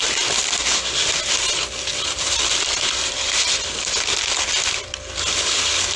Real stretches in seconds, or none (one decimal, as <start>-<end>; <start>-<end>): 0.0-6.0